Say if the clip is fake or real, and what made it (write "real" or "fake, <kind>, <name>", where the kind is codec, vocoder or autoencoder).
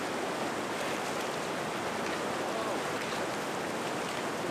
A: real